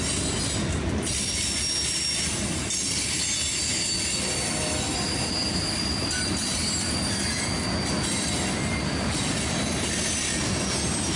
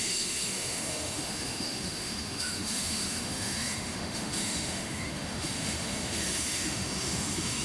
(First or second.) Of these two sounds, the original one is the first